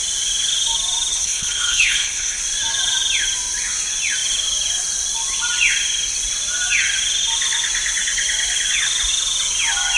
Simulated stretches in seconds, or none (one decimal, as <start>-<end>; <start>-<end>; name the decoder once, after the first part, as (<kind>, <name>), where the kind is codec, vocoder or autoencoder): 1.1-2.4 (codec, HILCodec)